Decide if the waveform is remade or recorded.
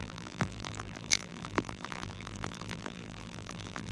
remade